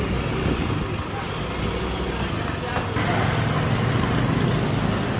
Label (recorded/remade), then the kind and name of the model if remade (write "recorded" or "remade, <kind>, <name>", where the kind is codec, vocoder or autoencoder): recorded